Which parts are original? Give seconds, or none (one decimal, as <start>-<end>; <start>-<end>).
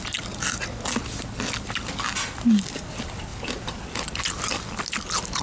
0.0-5.4